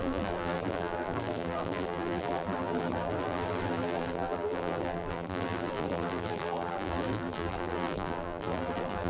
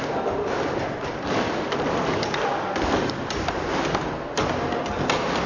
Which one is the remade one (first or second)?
first